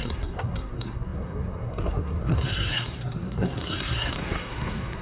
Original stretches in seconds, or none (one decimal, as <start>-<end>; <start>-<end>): none